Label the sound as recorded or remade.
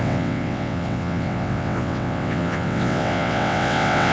remade